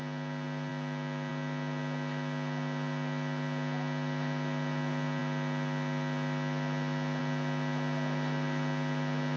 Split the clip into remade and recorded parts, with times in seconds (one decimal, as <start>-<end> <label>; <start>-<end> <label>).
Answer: 0.0-9.4 recorded